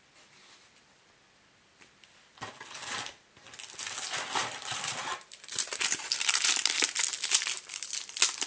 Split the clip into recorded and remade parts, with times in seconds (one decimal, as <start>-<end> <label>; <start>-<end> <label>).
0.0-4.4 recorded; 4.4-7.9 remade; 7.9-8.5 recorded